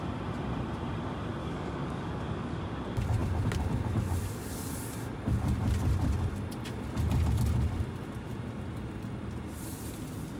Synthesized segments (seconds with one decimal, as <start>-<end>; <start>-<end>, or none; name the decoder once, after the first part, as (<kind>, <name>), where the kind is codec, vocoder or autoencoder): 1.4-2.7 (codec, DAC)